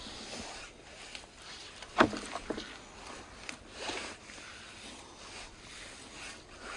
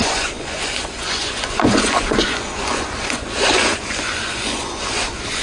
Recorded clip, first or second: first